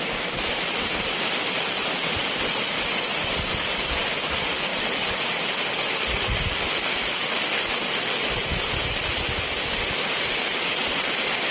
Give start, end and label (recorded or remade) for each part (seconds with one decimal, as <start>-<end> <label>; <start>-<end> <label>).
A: 0.0-11.5 recorded